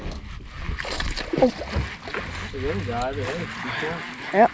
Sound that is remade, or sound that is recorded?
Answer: recorded